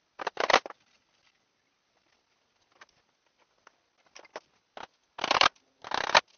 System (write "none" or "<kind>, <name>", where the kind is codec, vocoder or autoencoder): none